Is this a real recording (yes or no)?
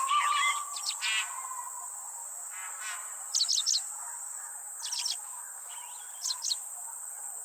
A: yes